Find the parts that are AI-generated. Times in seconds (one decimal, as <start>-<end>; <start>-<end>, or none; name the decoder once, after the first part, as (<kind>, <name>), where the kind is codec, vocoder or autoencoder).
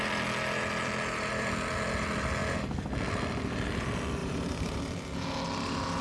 4.2-4.8 (vocoder, BigVGAN v2)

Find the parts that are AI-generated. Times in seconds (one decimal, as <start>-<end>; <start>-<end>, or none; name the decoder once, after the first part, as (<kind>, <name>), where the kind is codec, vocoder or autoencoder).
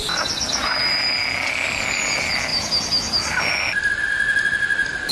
none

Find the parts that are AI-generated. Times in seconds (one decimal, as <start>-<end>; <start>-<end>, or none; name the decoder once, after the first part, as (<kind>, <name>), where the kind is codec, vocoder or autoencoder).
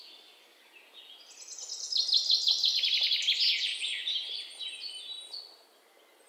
none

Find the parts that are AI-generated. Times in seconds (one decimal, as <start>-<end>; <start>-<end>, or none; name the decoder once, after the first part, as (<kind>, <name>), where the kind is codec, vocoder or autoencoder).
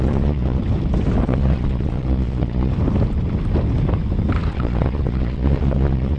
0.0-0.6 (vocoder, Vocos); 1.2-2.7; 4.5-6.2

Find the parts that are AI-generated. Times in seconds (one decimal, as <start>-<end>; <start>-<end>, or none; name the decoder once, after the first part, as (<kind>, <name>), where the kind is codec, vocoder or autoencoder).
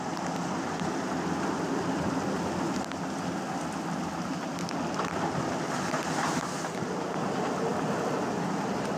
none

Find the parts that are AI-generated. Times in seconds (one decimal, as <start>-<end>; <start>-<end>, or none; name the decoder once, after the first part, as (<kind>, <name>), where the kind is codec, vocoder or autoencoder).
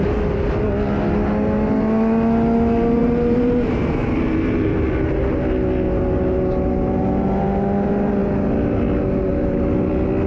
3.0-4.9 (vocoder, BigVGAN v2)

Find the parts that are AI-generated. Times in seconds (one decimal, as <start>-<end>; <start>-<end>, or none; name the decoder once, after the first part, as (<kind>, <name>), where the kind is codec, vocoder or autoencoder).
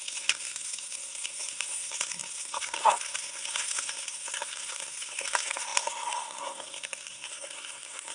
0.0-8.1 (codec, SNAC)